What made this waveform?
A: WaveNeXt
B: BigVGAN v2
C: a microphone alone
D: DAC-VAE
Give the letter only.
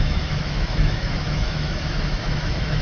D